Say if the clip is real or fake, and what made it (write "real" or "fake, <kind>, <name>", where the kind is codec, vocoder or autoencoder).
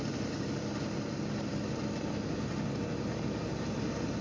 real